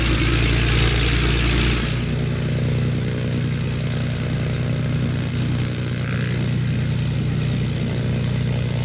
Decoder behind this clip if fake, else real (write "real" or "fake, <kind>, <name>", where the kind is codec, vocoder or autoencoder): real